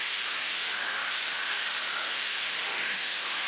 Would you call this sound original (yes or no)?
no